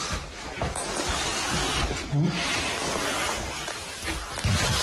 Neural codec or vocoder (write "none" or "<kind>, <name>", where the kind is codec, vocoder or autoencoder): none